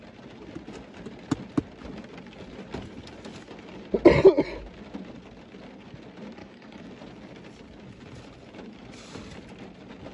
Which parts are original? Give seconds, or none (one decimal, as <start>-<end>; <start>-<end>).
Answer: 0.0-6.4; 6.9-10.1